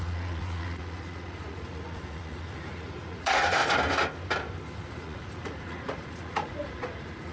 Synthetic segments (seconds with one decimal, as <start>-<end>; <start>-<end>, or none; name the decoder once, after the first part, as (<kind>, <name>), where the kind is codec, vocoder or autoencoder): 0.0-3.6 (vocoder, Vocos); 4.9-7.3